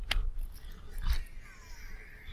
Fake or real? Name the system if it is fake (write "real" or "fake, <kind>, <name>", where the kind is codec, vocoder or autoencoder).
real